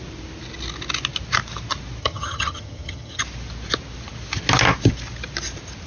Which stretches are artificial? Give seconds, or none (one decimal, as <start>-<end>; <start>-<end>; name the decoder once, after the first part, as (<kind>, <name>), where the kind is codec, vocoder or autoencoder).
2.0-3.2 (vocoder, HiFi-GAN)